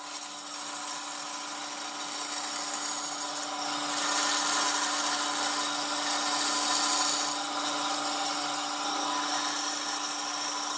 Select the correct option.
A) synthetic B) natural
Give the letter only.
B